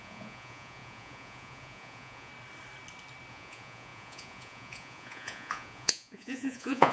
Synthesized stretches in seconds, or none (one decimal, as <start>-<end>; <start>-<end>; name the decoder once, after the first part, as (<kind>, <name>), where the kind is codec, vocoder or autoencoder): 0.0-2.3 (vocoder, Vocos); 3.3-6.9